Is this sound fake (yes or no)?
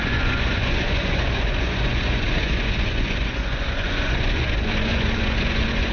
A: yes